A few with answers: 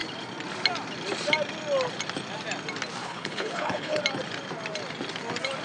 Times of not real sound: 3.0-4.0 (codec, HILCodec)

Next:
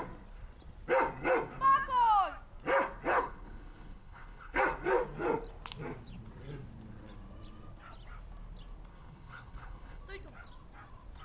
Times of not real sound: 3.1-4.6 (codec, HILCodec); 8.9-10.0

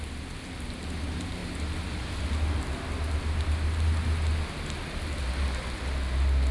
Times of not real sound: none

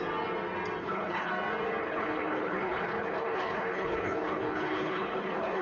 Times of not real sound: 0.8-1.3 (codec, HILCodec); 1.8-5.6

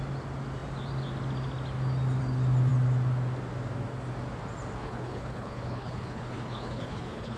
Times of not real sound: 4.8-7.4 (codec, HILCodec)